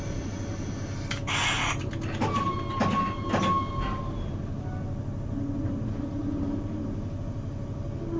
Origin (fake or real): real